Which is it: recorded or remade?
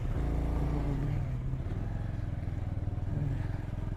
recorded